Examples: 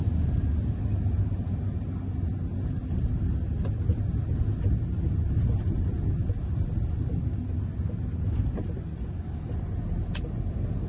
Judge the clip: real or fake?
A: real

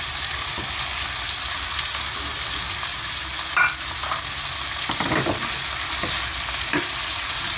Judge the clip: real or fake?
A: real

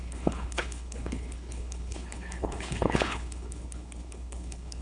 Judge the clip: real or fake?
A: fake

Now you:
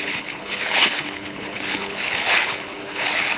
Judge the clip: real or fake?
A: fake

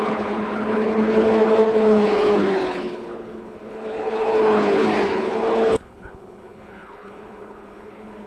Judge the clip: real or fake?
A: fake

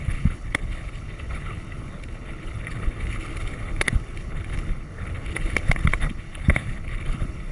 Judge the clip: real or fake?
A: fake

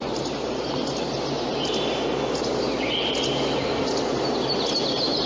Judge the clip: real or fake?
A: real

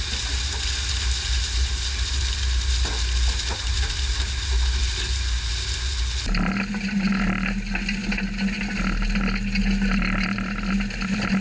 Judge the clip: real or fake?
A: real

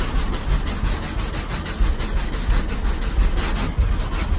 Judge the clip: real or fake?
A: real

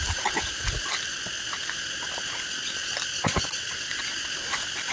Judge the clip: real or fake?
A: real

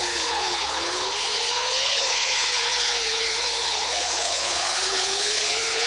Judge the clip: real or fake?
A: fake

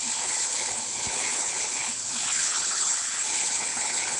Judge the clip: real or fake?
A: fake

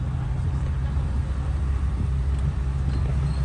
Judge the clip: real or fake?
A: real